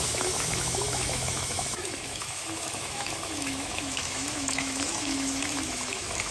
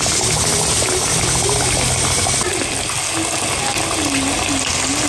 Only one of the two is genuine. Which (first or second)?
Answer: second